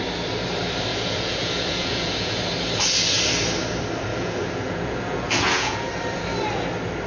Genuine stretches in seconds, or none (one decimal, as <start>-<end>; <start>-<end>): 0.0-0.9; 2.4-4.1; 5.9-7.1